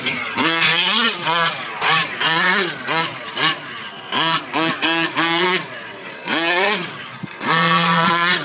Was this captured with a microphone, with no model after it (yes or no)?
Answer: no